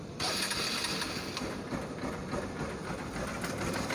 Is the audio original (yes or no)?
yes